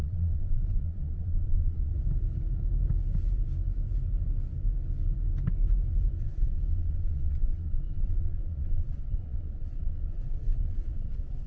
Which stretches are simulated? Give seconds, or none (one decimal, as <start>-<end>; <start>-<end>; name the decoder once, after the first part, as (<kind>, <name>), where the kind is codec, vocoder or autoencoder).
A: 0.0-1.9 (vocoder, Vocos); 6.2-11.5